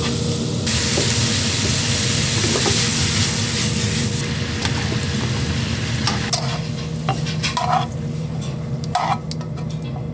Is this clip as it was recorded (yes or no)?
yes